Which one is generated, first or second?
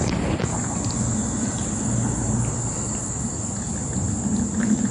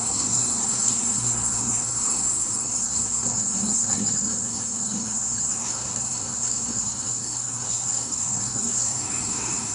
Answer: second